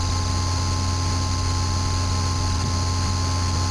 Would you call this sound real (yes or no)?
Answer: yes